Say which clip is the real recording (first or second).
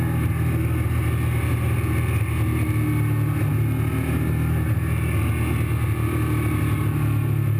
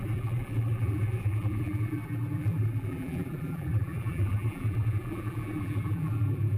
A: first